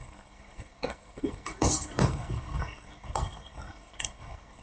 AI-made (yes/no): yes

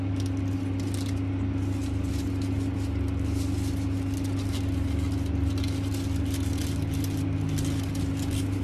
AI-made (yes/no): no